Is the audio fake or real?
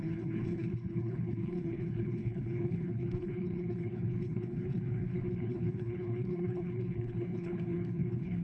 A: fake